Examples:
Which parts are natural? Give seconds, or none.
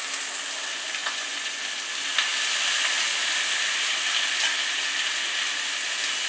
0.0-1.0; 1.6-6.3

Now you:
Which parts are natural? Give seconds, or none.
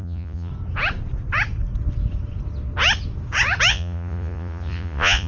0.5-3.7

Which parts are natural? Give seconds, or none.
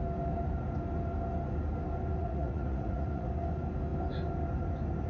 0.0-2.2; 3.3-5.1